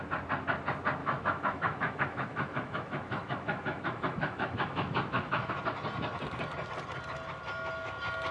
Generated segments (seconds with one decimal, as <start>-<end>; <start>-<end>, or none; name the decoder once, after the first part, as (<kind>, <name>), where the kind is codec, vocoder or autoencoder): 1.0-5.5 (autoencoder, DAC-VAE)